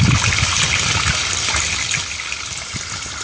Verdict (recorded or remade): remade